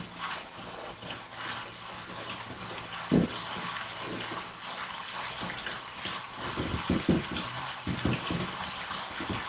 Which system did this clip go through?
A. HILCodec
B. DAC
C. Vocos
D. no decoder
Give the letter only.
D